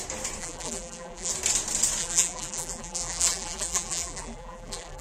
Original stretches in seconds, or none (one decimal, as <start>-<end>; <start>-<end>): 0.0-0.4; 1.3-2.0